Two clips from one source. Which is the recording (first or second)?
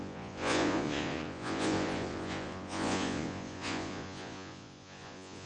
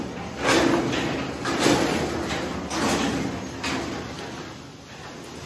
second